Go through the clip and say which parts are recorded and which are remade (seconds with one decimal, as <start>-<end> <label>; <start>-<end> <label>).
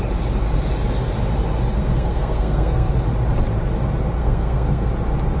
0.0-1.8 recorded; 1.8-2.9 remade; 2.9-4.2 recorded; 4.2-4.9 remade; 4.9-5.4 recorded